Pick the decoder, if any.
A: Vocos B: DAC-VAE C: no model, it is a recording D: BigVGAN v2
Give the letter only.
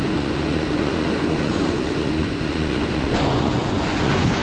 A